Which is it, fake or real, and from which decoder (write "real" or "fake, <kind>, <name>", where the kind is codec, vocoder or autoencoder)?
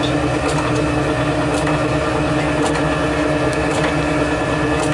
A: real